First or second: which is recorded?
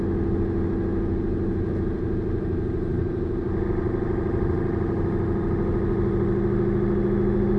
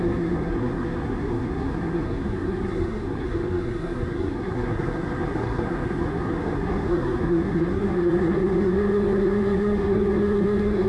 first